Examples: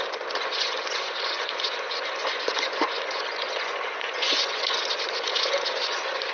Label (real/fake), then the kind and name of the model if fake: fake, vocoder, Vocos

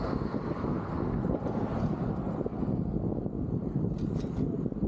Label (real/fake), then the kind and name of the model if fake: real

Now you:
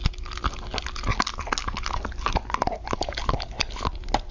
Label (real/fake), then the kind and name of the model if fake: real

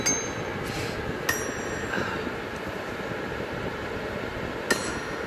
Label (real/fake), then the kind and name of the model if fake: real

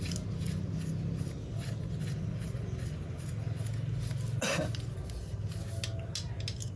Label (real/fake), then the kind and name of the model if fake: real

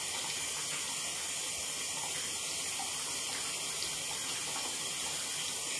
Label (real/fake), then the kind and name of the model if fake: real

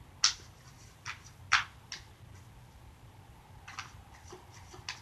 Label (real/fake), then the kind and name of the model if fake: real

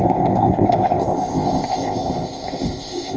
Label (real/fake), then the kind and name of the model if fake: fake, codec, ZipCodec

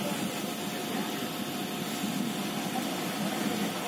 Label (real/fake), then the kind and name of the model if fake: real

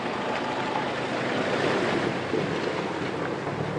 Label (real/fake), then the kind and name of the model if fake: real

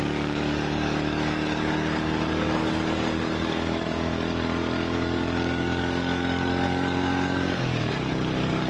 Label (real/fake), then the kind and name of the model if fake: fake, codec, DAC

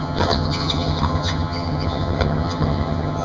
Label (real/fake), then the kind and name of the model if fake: fake, vocoder, HiFi-GAN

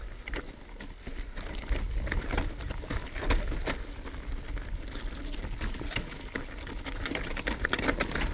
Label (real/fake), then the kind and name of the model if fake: real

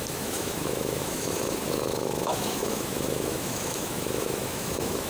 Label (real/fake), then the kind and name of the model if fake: fake, autoencoder, DAC-VAE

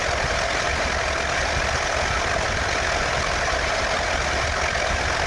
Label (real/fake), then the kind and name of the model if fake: real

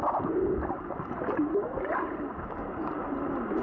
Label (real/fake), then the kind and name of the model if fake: real